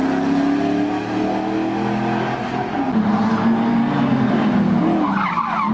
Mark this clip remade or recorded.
recorded